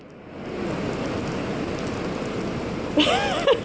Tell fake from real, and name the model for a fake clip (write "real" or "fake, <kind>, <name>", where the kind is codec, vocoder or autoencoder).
real